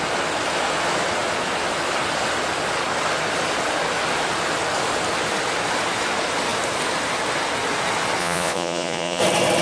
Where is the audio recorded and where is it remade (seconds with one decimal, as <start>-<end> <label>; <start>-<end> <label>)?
0.0-8.2 recorded; 8.2-9.2 remade; 9.2-9.6 recorded